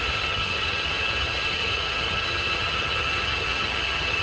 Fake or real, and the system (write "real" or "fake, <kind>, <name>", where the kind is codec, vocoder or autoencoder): fake, vocoder, HiFi-GAN